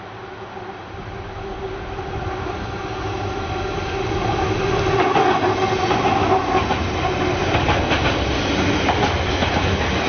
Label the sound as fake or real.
real